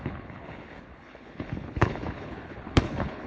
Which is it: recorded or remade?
remade